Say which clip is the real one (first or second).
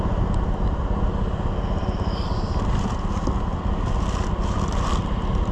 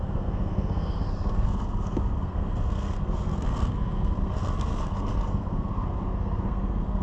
first